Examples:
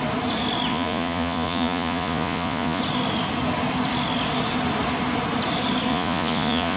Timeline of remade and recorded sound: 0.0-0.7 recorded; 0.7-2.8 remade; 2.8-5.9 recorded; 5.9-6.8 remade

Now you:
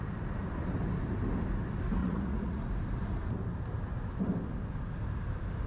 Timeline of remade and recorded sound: 0.0-2.0 recorded; 2.0-2.6 remade; 2.6-5.7 recorded

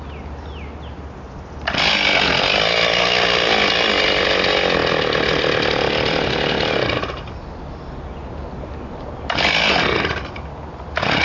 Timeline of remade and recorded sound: 0.0-11.2 recorded

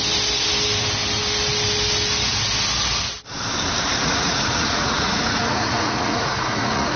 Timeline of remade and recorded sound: 0.0-4.0 recorded; 4.0-7.0 remade